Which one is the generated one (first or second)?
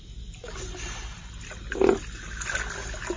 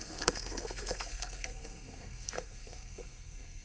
second